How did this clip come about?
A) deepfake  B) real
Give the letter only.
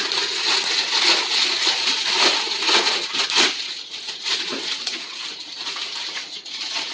A